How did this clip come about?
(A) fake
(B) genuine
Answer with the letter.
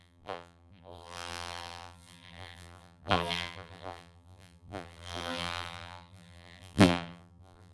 A